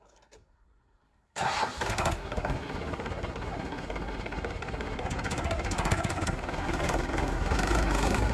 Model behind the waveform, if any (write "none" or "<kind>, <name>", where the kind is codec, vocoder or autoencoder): codec, SNAC